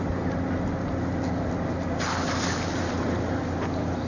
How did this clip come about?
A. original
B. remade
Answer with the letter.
A